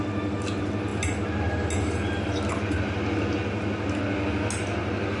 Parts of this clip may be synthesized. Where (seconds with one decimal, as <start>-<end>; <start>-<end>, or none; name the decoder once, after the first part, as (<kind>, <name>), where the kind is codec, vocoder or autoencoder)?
none